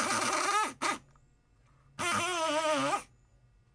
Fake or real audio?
real